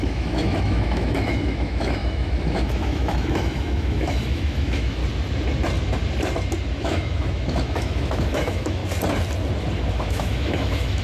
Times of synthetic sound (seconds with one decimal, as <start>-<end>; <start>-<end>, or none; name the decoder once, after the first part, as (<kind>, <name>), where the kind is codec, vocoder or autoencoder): 0.0-5.0 (autoencoder, DAC-VAE); 6.7-8.8; 9.9-11.0